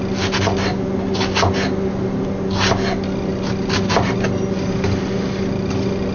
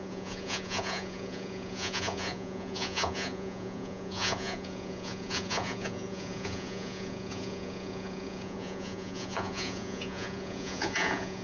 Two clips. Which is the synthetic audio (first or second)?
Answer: second